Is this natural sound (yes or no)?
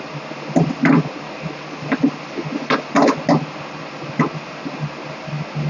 yes